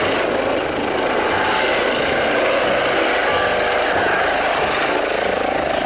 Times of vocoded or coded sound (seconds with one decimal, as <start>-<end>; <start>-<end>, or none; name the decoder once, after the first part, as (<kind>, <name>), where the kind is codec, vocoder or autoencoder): none

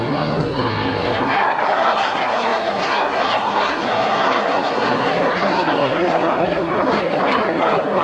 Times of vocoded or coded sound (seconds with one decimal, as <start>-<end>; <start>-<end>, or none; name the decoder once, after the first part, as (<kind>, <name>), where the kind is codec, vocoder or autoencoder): 0.0-8.0 (codec, SNAC)

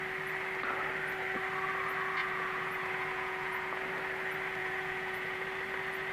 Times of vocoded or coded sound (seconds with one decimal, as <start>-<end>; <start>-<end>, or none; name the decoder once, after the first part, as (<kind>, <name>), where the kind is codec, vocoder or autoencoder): 2.2-3.8 (vocoder, Vocos); 4.6-5.4

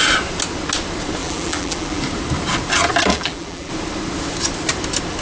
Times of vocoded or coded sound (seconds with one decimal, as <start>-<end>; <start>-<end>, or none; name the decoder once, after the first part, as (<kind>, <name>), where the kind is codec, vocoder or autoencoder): 1.2-2.0 (vocoder, BigVGAN v2); 3.1-3.7

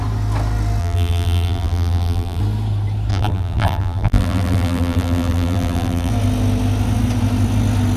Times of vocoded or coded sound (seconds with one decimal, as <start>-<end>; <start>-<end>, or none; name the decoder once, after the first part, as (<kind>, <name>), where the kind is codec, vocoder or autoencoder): 0.8-2.4 (vocoder, BigVGAN v2); 3.1-6.1

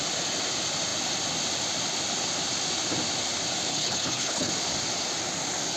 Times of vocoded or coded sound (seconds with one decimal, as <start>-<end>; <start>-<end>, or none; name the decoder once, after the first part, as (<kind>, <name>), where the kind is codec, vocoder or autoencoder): 3.7-4.5 (codec, HILCodec)

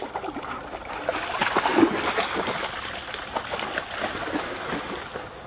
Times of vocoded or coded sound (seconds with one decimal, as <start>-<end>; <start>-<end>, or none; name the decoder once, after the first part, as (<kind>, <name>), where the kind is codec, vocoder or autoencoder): none